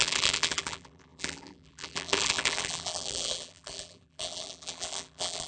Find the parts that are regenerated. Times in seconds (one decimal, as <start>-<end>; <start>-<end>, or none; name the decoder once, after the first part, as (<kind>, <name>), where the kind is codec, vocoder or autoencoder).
0.0-5.5 (vocoder, BigVGAN v2)